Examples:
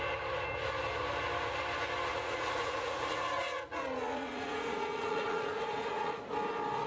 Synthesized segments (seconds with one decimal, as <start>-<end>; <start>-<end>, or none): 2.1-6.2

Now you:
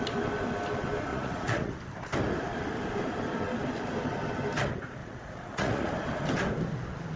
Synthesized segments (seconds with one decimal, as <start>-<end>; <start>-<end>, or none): 1.1-1.7; 5.0-5.9

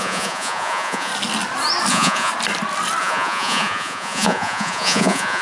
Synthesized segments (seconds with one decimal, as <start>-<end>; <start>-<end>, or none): 0.0-1.1; 1.9-2.3; 3.0-5.4

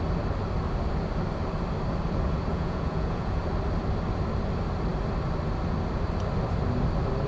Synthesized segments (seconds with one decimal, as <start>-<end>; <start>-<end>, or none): 2.5-3.4